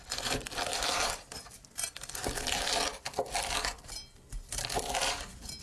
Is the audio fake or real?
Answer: real